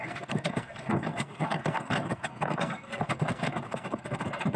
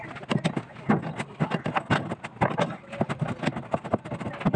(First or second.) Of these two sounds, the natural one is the second